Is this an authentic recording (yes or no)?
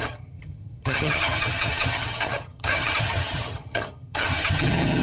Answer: no